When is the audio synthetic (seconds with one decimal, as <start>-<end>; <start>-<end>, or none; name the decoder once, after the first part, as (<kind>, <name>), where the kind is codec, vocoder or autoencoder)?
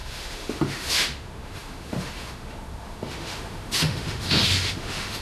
0.0-5.2 (autoencoder, DAC-VAE)